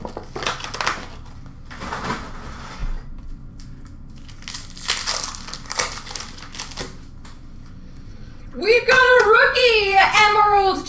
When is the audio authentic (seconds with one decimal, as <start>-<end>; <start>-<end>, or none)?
0.0-8.1